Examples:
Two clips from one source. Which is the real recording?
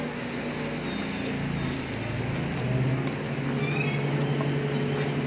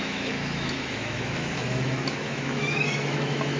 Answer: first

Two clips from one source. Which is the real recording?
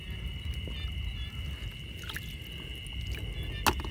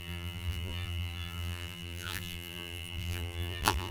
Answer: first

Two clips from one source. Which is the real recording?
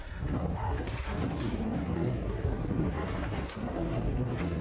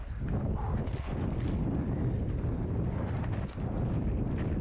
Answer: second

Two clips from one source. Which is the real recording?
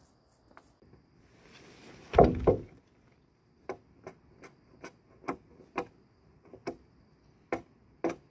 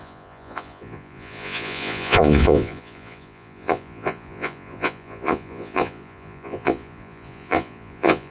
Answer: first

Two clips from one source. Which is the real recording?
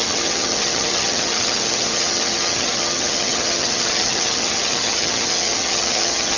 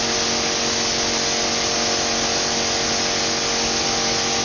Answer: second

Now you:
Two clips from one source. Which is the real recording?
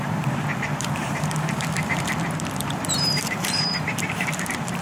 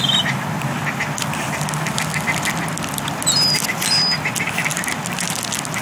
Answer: second